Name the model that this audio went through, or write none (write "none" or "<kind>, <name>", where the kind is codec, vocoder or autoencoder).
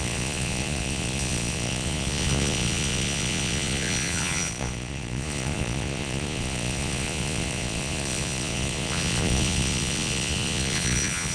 vocoder, Vocos